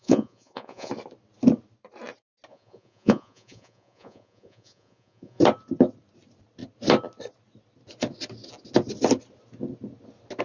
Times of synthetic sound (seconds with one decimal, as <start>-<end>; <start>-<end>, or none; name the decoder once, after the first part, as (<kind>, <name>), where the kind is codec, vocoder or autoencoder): 0.0-0.9 (vocoder, Vocos); 2.5-5.4